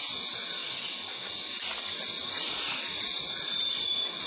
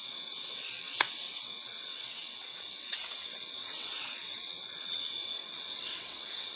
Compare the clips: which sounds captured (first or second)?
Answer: first